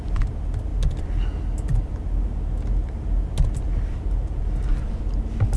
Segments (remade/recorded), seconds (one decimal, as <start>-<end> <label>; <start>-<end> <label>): 0.0-5.6 recorded